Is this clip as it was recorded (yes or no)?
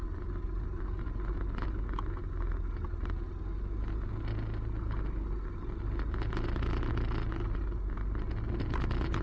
yes